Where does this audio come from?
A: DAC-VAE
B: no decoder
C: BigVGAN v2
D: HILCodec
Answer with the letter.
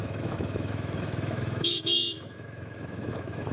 A